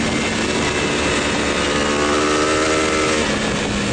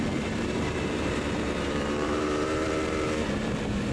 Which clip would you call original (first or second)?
first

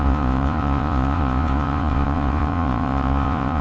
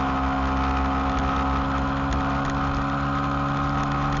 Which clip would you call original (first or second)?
second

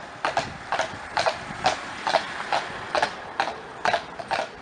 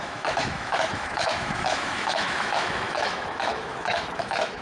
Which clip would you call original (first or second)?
first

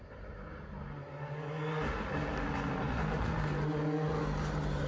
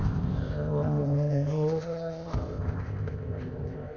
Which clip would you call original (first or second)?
first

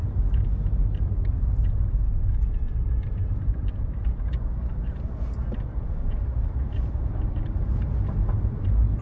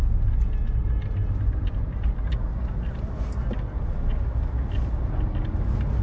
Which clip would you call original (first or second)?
second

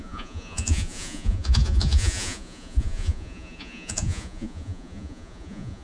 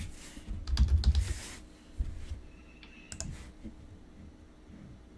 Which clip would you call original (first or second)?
second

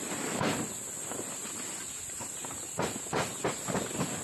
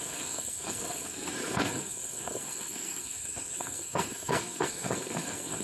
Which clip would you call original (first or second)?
first